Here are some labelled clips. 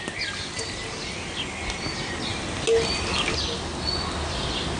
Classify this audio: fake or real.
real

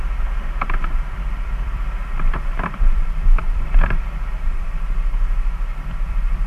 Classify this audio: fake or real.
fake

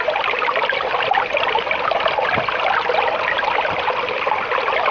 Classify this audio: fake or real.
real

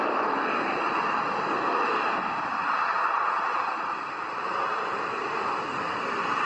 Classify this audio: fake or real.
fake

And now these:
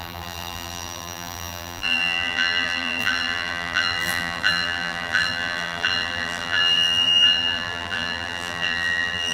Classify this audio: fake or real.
fake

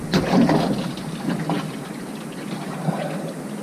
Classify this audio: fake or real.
real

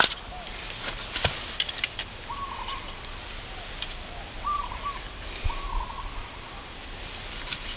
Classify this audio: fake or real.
fake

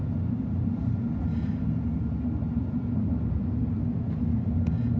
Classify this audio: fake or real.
real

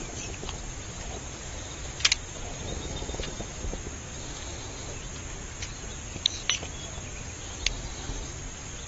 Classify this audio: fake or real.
real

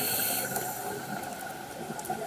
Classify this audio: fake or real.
real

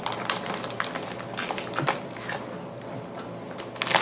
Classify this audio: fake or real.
real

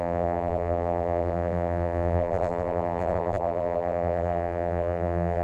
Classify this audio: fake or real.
fake